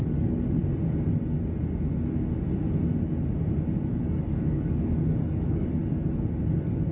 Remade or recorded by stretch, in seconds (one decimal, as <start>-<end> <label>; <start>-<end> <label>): 0.0-0.6 remade; 0.6-3.9 recorded; 3.9-5.8 remade; 5.8-6.5 recorded; 6.5-6.9 remade